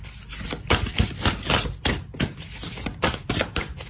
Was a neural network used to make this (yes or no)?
no